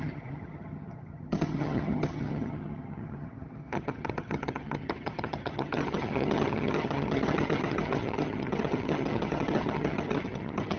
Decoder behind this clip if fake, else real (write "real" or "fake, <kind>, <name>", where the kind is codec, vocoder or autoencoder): fake, vocoder, HiFi-GAN